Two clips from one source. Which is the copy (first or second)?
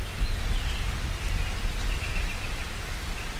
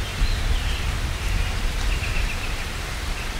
second